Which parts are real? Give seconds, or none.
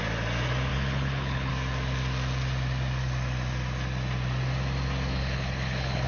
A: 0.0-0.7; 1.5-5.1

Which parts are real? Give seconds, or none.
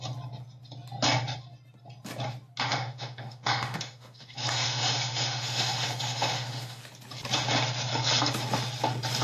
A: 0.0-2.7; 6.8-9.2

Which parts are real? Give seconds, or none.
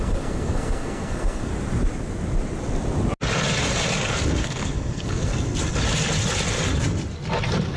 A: 1.5-4.4; 5.3-7.8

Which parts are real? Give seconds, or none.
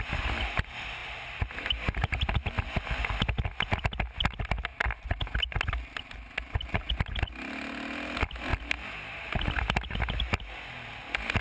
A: 0.0-11.4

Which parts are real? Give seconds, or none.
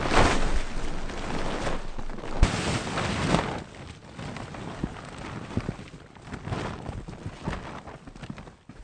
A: 0.0-8.8